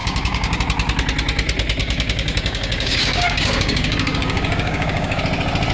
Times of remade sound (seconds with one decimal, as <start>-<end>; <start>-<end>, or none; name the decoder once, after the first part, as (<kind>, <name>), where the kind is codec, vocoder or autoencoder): 0.0-0.6 (codec, DAC); 1.8-5.2